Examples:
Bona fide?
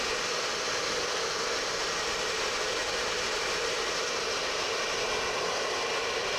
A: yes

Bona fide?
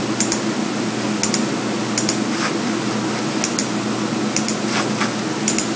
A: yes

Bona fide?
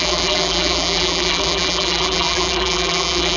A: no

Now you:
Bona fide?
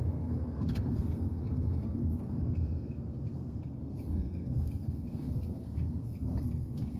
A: no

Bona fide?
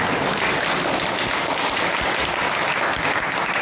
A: yes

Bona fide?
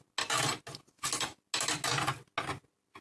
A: yes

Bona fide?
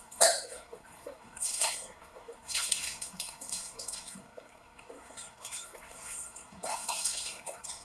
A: no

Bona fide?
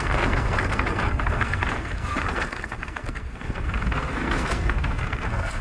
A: no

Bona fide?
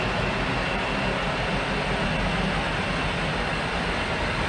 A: yes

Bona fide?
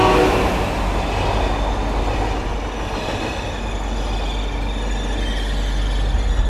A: yes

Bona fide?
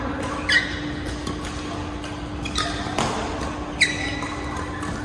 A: yes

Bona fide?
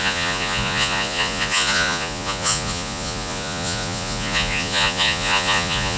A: no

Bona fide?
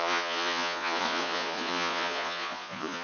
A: no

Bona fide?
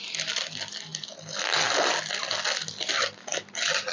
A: yes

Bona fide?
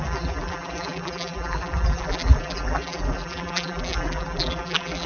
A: no